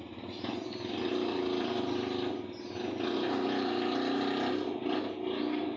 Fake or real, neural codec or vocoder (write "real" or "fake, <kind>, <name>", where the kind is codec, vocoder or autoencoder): real